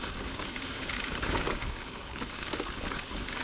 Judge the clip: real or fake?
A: fake